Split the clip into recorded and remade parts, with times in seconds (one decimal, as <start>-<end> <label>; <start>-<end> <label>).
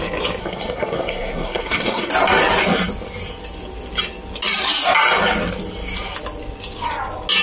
0.0-0.4 recorded; 0.4-2.1 remade; 2.1-7.4 recorded